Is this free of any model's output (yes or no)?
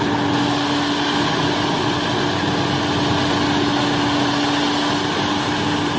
yes